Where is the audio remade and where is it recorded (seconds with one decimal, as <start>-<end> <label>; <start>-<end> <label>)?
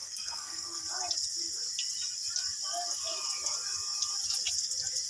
0.0-0.8 remade; 0.8-5.1 recorded